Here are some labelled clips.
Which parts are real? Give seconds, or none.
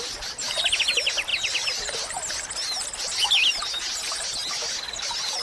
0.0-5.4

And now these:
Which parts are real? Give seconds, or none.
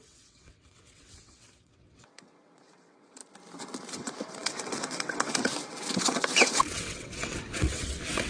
3.2-3.9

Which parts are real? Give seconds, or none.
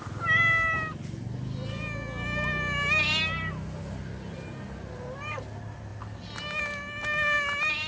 0.0-7.9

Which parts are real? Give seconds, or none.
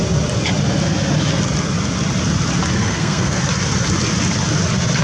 0.0-2.8; 3.4-5.0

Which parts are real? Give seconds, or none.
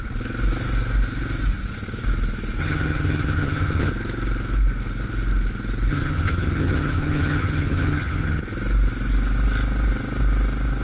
0.0-2.6; 3.9-5.9; 8.4-10.8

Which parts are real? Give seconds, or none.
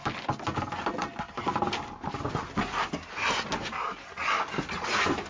0.0-5.3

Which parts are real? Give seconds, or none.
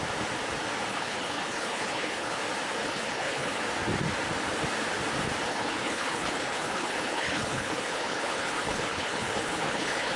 0.0-0.9; 2.4-2.8; 3.6-5.5